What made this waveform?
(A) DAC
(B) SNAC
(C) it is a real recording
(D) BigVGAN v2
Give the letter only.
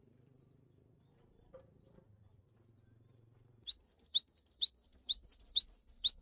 D